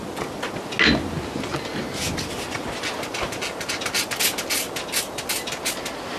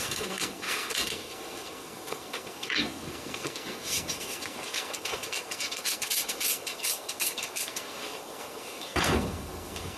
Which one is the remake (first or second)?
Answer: second